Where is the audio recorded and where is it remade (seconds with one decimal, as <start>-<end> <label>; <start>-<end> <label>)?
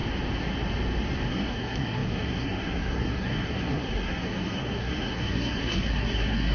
0.0-1.3 recorded; 1.3-6.5 remade